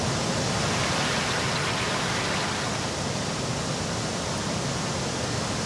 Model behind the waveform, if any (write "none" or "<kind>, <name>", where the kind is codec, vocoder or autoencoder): none